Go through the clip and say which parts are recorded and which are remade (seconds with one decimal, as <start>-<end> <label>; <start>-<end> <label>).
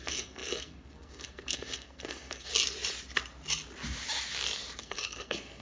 0.0-2.5 remade; 2.5-4.8 recorded; 4.8-5.6 remade